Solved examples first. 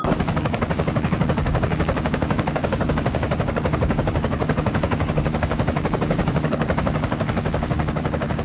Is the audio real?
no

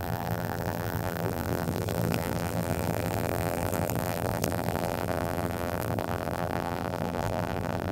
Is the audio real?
no